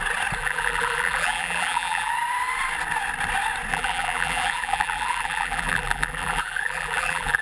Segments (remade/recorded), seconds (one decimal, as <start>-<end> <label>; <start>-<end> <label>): 0.0-0.4 recorded; 0.4-2.1 remade; 2.1-3.7 recorded; 3.7-7.4 remade